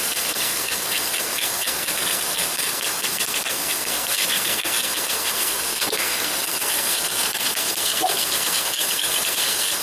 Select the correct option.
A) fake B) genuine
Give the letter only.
A